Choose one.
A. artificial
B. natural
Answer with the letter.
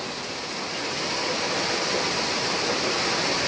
B